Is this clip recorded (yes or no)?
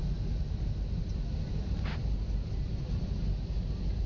yes